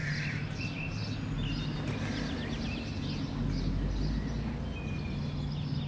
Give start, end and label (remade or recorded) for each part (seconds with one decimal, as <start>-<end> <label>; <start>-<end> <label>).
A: 0.0-5.9 recorded